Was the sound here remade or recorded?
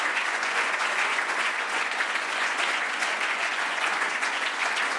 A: remade